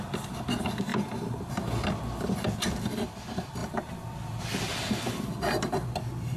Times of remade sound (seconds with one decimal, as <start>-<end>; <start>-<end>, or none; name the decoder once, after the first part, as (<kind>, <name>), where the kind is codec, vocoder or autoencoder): 0.9-1.5 (vocoder, BigVGAN v2)